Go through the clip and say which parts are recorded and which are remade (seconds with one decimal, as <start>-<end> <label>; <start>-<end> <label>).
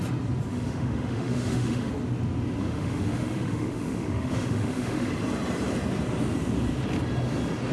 0.0-0.5 recorded; 0.5-1.9 remade; 1.9-2.6 recorded; 2.6-5.1 remade; 5.1-7.7 recorded